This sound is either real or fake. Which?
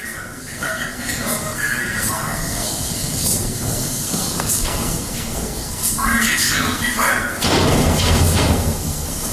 fake